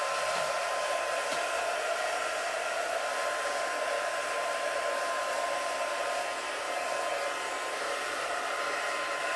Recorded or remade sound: recorded